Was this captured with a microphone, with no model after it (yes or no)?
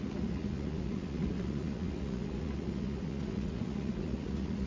no